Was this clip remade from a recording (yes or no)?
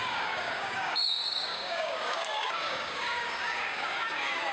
yes